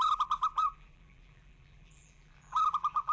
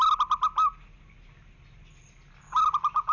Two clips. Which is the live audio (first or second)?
second